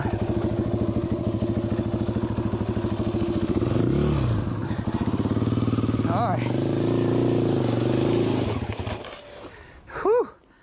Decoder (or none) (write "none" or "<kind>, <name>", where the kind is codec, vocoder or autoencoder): none